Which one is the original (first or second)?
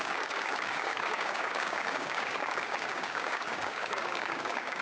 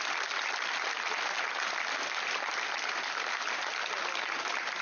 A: second